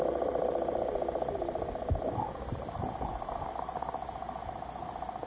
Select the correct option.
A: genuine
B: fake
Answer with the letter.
A